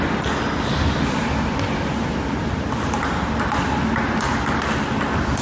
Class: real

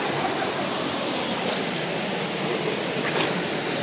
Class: real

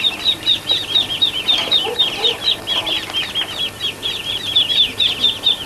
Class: real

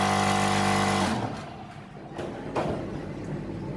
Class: real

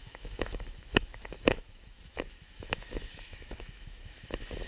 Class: fake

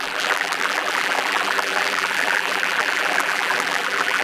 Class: fake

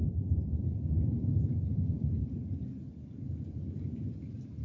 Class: fake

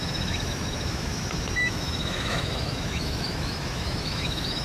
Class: fake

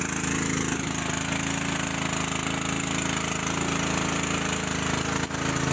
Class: real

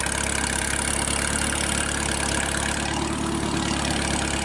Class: real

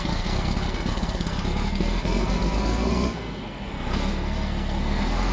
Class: fake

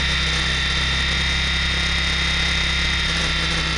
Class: real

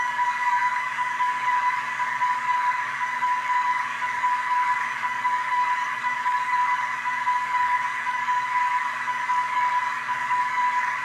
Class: fake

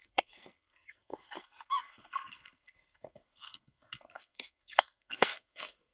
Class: fake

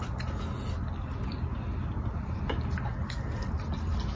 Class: real